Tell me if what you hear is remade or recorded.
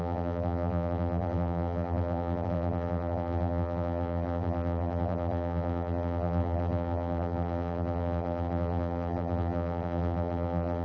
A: remade